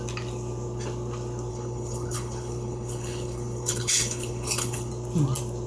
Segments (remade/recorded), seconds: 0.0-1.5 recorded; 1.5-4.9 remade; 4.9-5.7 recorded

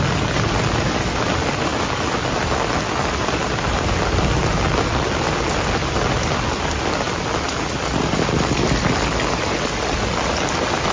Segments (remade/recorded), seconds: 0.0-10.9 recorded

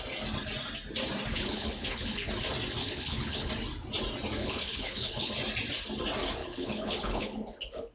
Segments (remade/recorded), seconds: 0.0-1.3 recorded; 1.3-2.3 remade; 2.3-2.8 recorded; 2.8-3.5 remade; 3.5-4.4 recorded; 4.4-5.3 remade; 5.3-6.4 recorded; 6.4-7.9 remade

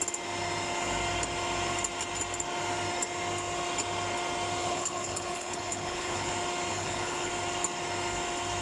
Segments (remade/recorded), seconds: 0.0-4.6 recorded; 4.6-6.3 remade; 6.3-6.7 recorded; 6.7-7.3 remade; 7.3-8.6 recorded

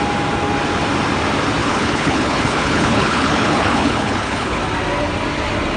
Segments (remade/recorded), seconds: 0.0-1.6 recorded; 1.6-4.6 remade; 4.6-5.8 recorded

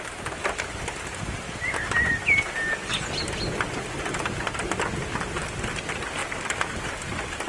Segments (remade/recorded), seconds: 0.0-7.5 recorded

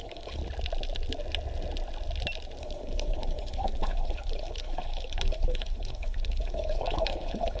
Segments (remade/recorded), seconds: 0.0-0.4 remade; 0.4-2.6 recorded; 2.6-7.6 remade